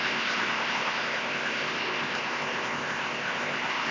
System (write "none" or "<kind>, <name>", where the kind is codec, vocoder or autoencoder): codec, ZipCodec